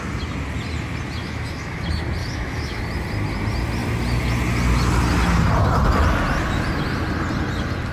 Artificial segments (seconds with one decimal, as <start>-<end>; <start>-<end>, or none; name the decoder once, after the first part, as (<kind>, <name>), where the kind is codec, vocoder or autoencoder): 1.2-1.8 (autoencoder, DAC-VAE); 2.2-2.8